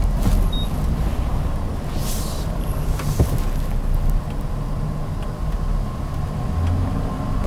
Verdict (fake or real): real